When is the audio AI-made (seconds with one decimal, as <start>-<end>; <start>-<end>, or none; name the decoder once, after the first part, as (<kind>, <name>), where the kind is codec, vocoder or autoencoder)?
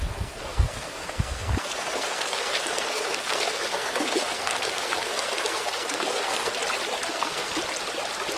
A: 0.0-6.5 (codec, SNAC); 7.1-7.5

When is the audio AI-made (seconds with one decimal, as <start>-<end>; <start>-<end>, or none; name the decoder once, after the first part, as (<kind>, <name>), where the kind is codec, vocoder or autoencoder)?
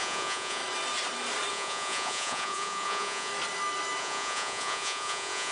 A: 0.0-0.6 (vocoder, Vocos); 1.5-3.3; 4.0-5.5